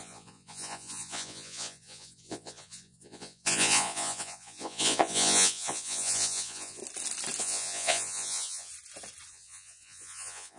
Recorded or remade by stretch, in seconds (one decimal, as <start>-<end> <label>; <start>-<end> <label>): 0.0-6.8 remade; 6.8-7.4 recorded; 7.4-8.7 remade; 8.7-9.3 recorded; 9.3-10.6 remade